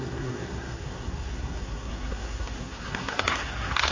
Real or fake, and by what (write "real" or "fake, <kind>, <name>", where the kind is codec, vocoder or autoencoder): fake, codec, SNAC